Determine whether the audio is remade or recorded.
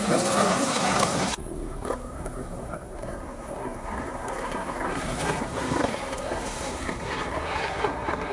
remade